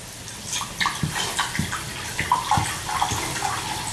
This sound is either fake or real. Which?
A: real